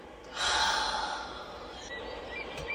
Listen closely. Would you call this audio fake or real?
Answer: real